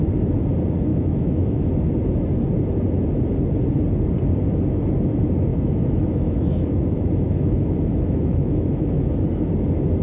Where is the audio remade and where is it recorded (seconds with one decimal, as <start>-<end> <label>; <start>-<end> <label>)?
0.0-0.9 recorded; 0.9-1.7 remade; 1.7-5.5 recorded; 5.5-9.1 remade; 9.1-10.0 recorded